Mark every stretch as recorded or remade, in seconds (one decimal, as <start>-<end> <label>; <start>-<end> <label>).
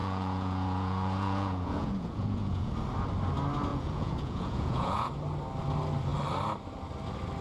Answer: 0.0-2.7 remade; 2.7-3.7 recorded; 3.7-5.1 remade; 5.1-7.4 recorded